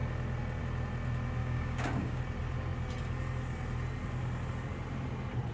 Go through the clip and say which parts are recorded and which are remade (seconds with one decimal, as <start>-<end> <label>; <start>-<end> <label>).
0.0-1.4 recorded; 1.4-2.2 remade; 2.2-5.5 recorded